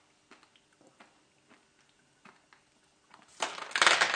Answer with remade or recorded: recorded